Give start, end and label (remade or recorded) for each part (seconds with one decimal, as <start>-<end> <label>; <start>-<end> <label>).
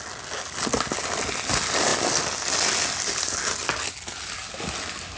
0.0-5.2 recorded